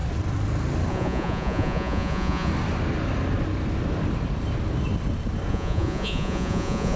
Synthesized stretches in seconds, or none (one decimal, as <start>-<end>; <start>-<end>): 0.9-2.5; 5.5-7.0